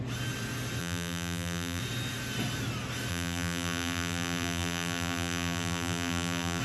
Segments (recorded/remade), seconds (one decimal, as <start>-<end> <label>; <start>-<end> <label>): 0.0-0.8 recorded; 0.8-1.8 remade; 1.8-3.1 recorded; 3.1-6.6 remade